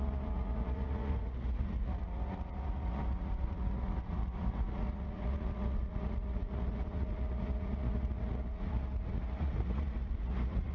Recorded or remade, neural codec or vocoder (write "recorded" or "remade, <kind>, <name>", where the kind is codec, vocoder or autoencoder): remade, vocoder, Vocos